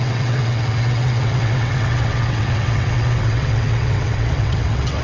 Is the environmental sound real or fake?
fake